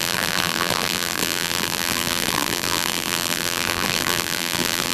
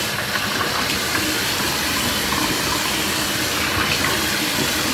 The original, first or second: second